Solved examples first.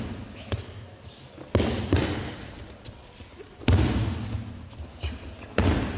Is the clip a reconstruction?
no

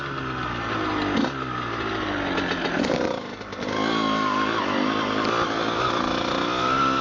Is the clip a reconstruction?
no